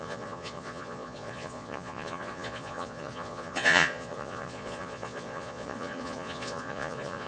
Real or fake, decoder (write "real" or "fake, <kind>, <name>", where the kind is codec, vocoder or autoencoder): fake, vocoder, Vocos